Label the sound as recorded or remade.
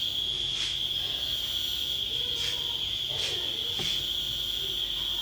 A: recorded